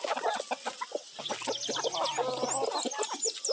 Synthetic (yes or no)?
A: no